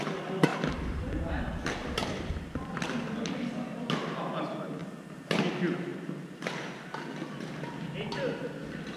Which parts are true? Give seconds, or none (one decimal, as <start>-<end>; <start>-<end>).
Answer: 0.0-0.5; 1.3-1.8; 2.3-4.8; 5.4-5.9; 6.8-9.0